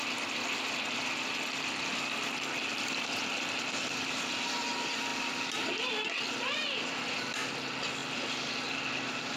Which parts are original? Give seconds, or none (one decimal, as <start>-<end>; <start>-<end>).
0.0-9.4